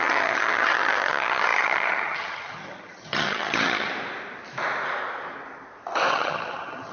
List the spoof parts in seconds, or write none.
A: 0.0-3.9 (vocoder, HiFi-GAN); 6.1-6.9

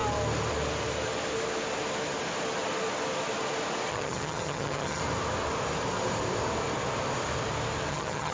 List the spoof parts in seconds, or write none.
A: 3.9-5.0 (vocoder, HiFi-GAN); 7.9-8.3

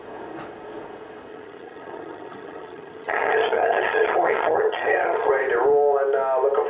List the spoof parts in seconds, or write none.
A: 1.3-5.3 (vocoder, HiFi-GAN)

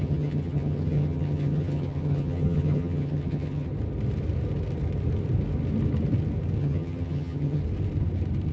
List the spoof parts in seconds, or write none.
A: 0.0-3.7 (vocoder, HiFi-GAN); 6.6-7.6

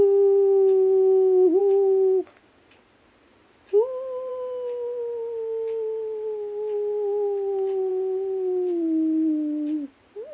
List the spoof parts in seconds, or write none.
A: none

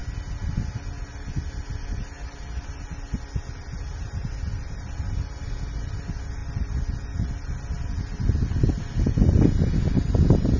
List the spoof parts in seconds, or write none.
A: none